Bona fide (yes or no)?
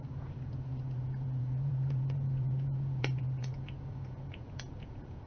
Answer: no